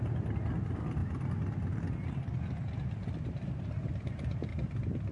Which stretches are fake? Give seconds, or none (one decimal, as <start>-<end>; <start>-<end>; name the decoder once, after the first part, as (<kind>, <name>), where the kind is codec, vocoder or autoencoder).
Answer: none